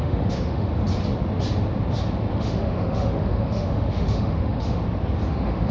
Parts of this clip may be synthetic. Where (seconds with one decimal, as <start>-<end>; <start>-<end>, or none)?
0.0-0.7; 2.3-4.8; 5.3-5.7